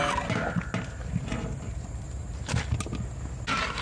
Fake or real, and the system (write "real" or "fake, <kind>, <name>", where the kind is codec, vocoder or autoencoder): real